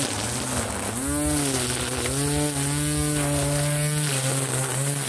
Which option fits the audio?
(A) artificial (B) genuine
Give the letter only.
B